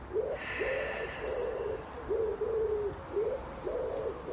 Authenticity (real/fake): real